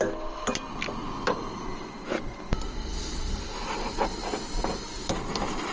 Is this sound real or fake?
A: real